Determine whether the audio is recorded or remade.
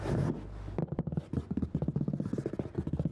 recorded